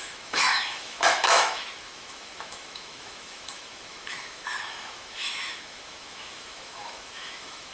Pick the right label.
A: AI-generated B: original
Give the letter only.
A